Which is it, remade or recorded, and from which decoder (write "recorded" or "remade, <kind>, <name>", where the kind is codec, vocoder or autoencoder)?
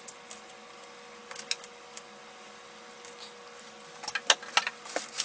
recorded